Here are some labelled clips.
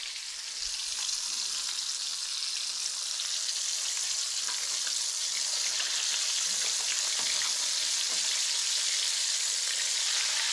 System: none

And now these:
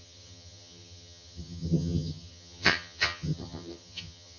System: vocoder, HiFi-GAN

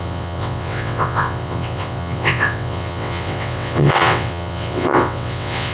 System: vocoder, WaveNeXt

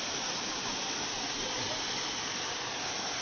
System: none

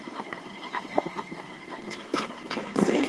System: codec, SNAC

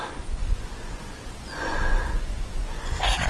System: vocoder, Vocos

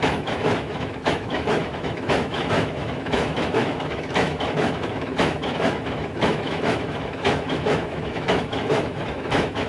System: autoencoder, DAC-VAE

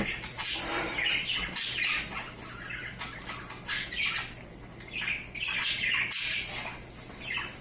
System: none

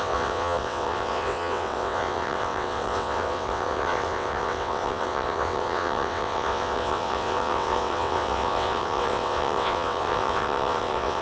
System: vocoder, WaveNeXt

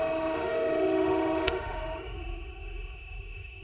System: autoencoder, DAC-VAE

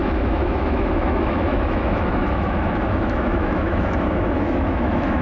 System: autoencoder, DAC-VAE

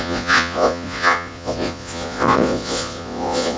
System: vocoder, Vocos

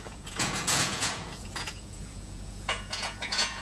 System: vocoder, Vocos